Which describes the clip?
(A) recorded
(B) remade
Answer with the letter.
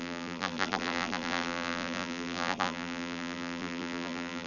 B